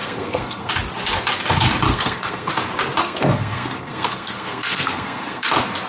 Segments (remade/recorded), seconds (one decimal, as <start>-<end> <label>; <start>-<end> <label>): 0.0-0.7 remade; 0.7-1.9 recorded; 1.9-2.5 remade; 2.5-3.0 recorded; 3.0-5.5 remade; 5.5-5.9 recorded